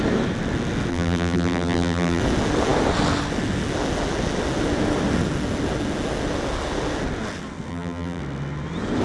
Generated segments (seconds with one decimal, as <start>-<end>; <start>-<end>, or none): 0.9-2.2; 7.7-8.2